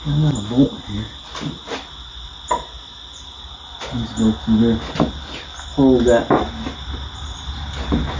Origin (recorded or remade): recorded